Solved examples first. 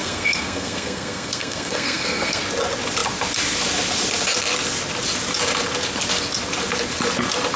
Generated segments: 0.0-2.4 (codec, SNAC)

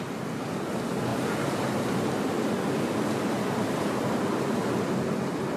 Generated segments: none

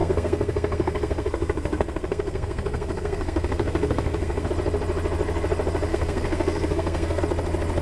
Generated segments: 0.0-4.5 (codec, SNAC); 5.9-7.2

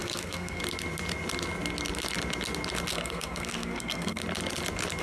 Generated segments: 0.0-0.6 (codec, SNAC); 2.9-4.2

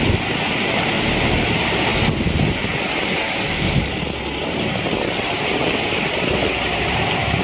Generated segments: none